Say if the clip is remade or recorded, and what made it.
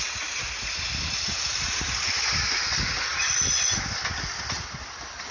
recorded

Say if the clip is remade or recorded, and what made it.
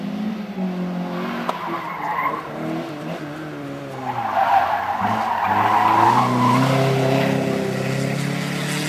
recorded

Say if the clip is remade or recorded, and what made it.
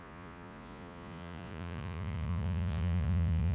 remade, vocoder, Vocos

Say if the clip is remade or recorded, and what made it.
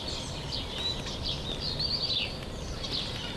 recorded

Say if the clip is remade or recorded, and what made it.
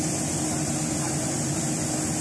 recorded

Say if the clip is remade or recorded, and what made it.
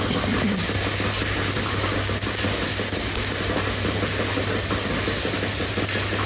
recorded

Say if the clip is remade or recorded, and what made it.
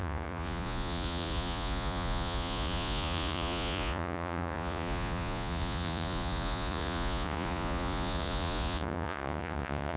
remade, vocoder, Vocos